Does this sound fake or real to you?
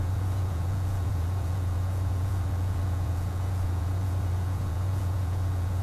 fake